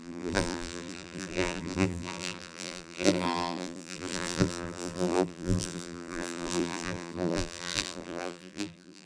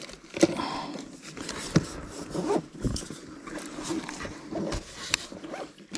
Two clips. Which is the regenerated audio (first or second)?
first